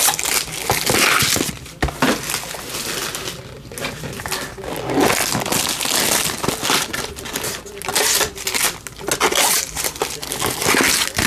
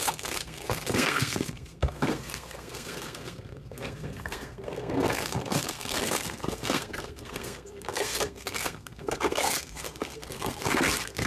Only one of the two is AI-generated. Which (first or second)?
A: second